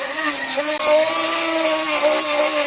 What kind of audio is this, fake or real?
real